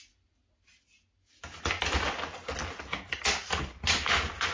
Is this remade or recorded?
recorded